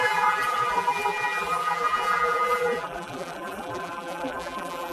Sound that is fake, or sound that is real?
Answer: fake